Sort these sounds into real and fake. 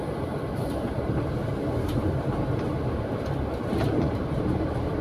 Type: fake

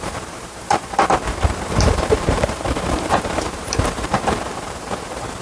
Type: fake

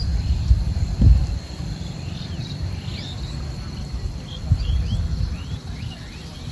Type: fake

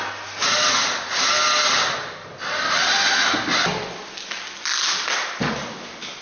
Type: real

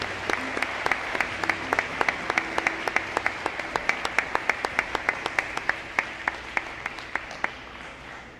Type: real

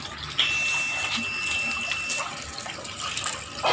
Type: real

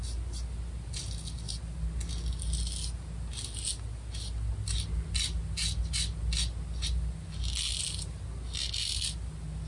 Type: real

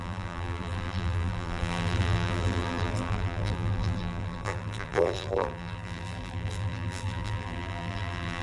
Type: fake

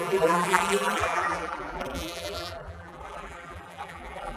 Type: fake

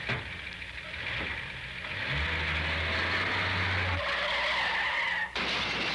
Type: real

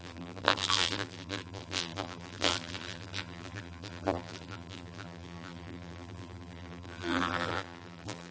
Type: fake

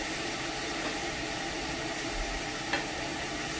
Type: fake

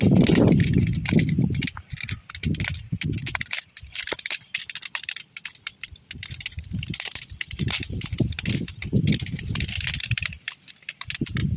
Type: fake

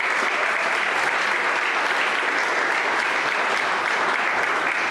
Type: real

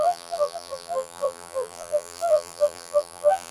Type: fake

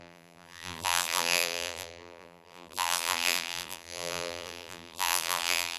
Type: fake